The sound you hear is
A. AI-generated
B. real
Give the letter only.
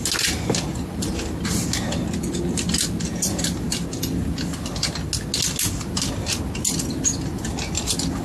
B